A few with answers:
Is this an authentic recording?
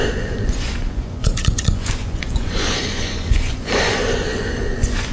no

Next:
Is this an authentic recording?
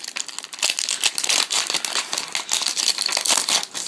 yes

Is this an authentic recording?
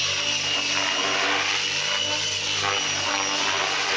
yes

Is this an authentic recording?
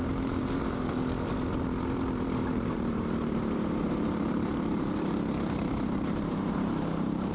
no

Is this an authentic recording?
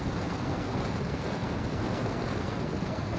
no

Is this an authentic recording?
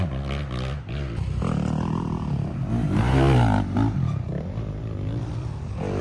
yes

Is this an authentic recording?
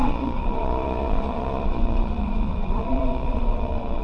no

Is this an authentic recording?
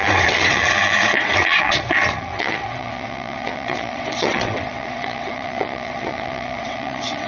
no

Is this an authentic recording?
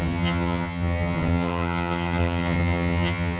no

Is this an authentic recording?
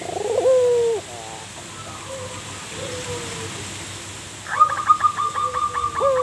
yes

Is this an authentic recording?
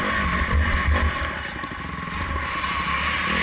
yes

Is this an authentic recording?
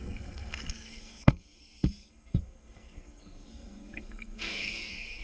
no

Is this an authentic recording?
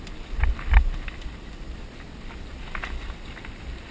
yes